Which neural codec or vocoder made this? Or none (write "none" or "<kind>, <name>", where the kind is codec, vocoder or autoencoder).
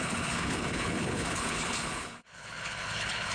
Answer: codec, HILCodec